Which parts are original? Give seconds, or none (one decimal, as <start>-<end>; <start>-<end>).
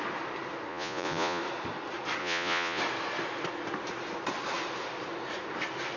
0.0-0.7; 1.4-2.2; 2.8-6.0